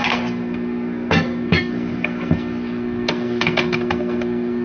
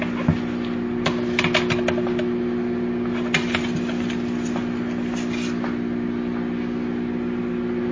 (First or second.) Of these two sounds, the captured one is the second